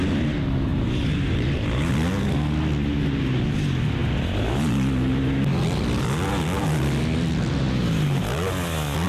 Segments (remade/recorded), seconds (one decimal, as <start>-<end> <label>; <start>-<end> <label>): 0.0-0.7 recorded; 0.7-1.9 remade; 1.9-9.1 recorded